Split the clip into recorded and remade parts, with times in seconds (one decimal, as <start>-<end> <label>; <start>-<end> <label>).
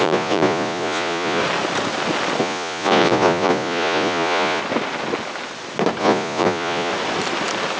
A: 0.0-1.4 remade; 1.4-2.4 recorded; 2.4-4.6 remade; 4.6-6.0 recorded; 6.0-6.9 remade; 6.9-7.8 recorded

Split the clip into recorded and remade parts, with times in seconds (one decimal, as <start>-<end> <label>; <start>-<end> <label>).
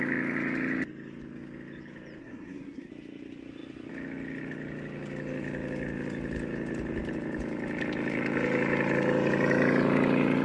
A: 0.0-2.2 recorded; 2.2-2.9 remade; 2.9-10.4 recorded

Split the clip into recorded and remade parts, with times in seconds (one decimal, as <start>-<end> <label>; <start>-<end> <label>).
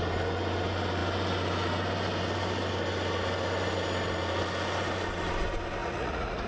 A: 0.0-5.8 recorded; 5.8-6.5 remade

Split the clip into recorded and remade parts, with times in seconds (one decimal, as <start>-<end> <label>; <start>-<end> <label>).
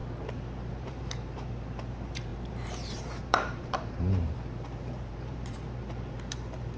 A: 0.0-6.8 remade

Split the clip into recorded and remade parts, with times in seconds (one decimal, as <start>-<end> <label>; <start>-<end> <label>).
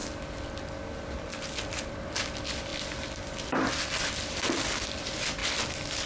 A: 0.0-1.7 recorded; 1.7-2.7 remade; 2.7-3.4 recorded; 3.4-5.4 remade; 5.4-6.1 recorded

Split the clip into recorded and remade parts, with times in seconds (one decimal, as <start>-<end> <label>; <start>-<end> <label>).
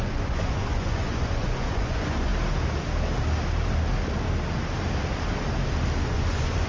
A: 0.0-2.3 remade; 2.3-6.0 recorded; 6.0-6.7 remade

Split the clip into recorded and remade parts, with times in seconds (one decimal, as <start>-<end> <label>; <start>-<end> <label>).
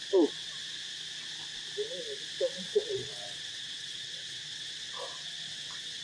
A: 0.0-0.6 remade; 0.6-2.4 recorded; 2.4-6.0 remade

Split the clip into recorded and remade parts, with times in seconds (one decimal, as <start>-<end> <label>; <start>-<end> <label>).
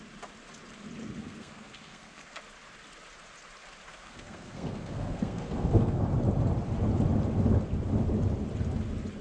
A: 0.0-1.0 recorded; 1.0-2.4 remade; 2.4-3.9 recorded; 3.9-6.0 remade; 6.0-9.2 recorded